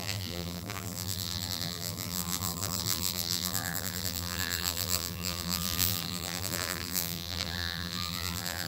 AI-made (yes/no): yes